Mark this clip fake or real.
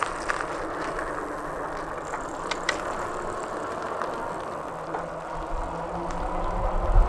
real